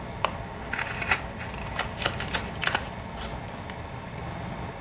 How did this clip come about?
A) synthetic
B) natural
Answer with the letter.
B